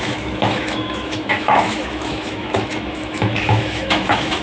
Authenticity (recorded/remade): remade